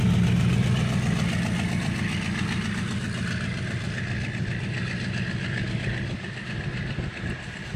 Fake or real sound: real